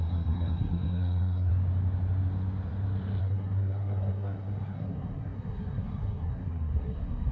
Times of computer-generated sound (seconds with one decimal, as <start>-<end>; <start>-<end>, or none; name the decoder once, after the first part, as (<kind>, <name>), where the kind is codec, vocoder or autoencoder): 0.0-1.5 (codec, SNAC); 3.2-7.3